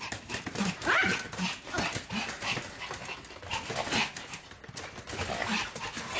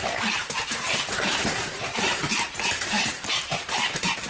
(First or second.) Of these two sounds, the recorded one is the first